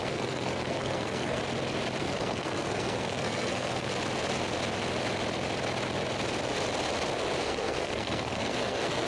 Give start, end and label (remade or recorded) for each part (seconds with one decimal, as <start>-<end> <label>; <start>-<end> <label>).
0.0-1.4 remade; 1.4-2.0 recorded; 2.0-3.9 remade; 3.9-7.4 recorded; 7.4-9.1 remade